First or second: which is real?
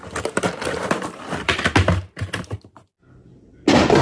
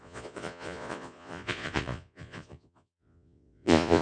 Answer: first